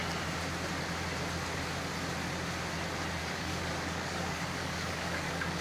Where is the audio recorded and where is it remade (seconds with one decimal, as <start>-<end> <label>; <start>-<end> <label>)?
0.0-3.2 recorded; 3.2-5.6 remade